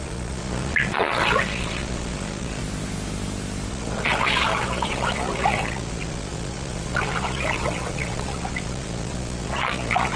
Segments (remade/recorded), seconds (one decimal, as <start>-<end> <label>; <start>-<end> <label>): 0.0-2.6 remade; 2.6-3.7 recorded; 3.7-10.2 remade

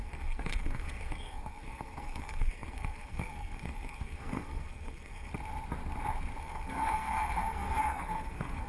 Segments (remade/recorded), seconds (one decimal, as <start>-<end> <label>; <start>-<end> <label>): 0.0-5.3 remade; 5.3-6.4 recorded; 6.4-8.7 remade

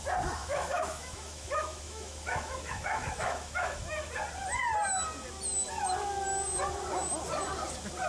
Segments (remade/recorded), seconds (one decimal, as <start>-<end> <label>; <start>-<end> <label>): 0.0-0.4 recorded; 0.4-4.1 remade; 4.1-8.1 recorded

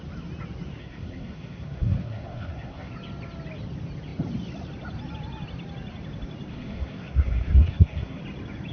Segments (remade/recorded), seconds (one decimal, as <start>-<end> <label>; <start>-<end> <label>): 0.0-0.8 recorded; 0.8-2.9 remade; 2.9-6.5 recorded; 6.5-8.2 remade; 8.2-8.7 recorded

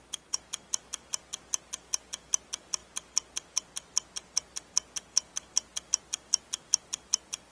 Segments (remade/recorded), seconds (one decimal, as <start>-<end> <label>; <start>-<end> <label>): 0.0-7.5 recorded